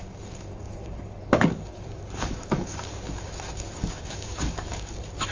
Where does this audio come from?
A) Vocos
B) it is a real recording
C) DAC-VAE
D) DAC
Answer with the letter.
D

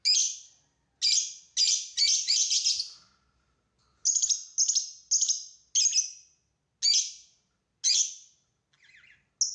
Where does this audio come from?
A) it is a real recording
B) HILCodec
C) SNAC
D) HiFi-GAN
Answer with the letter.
A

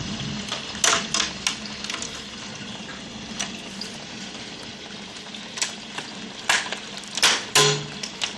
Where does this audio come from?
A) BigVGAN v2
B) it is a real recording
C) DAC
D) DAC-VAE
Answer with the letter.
B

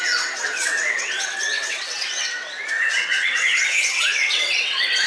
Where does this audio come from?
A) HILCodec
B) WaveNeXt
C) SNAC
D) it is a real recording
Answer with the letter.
B